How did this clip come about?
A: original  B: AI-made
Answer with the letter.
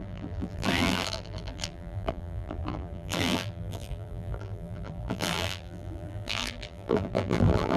B